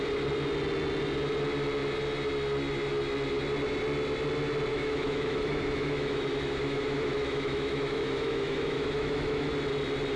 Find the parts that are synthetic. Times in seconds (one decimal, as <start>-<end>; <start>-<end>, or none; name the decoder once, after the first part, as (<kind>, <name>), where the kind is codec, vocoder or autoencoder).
4.7-9.5 (autoencoder, DAC-VAE)